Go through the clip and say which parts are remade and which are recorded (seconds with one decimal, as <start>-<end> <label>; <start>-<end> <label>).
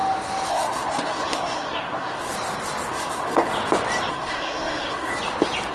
0.0-0.5 recorded; 0.5-2.3 remade; 2.3-2.9 recorded; 2.9-3.5 remade; 3.5-4.1 recorded; 4.1-5.1 remade; 5.1-5.7 recorded